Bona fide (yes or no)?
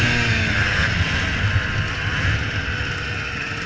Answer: yes